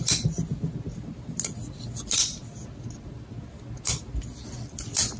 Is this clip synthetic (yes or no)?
no